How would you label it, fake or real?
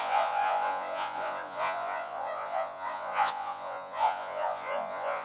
fake